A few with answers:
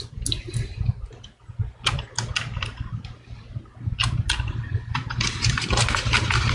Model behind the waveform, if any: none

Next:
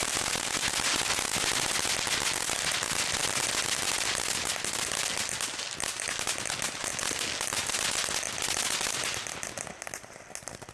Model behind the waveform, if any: none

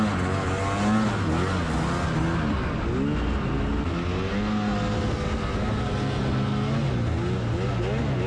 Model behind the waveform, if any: none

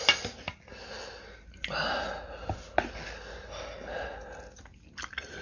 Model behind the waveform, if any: none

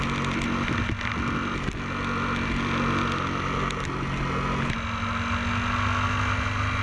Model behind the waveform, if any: none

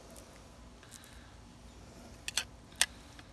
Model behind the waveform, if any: none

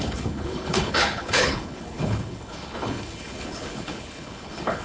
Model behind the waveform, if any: codec, HILCodec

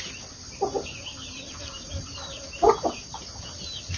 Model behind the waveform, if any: none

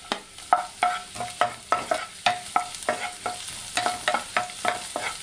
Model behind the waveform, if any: none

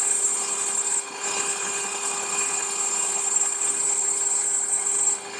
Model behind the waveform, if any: codec, HILCodec